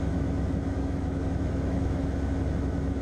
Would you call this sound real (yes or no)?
no